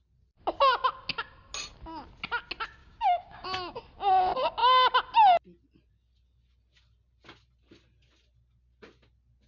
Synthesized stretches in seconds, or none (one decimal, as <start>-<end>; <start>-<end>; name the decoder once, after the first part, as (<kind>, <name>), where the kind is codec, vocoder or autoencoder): 2.8-3.8 (codec, DAC)